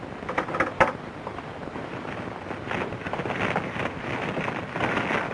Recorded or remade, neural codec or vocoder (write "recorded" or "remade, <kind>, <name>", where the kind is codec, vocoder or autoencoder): recorded